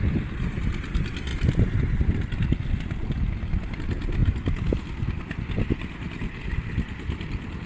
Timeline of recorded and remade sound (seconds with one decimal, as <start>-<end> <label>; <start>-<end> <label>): 0.0-1.3 recorded; 1.3-2.2 remade; 2.2-7.7 recorded